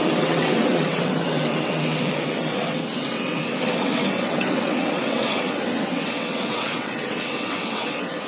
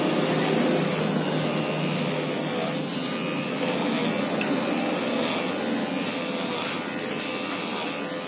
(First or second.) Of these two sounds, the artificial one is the first